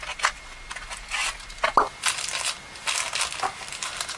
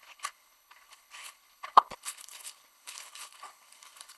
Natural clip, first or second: first